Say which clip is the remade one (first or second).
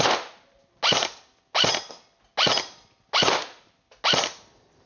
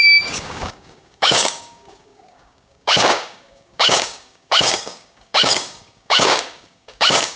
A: second